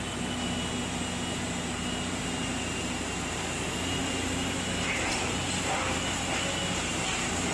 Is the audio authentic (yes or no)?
yes